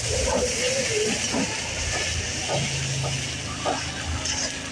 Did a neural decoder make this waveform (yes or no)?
no